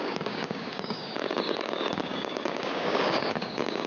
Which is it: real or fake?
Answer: fake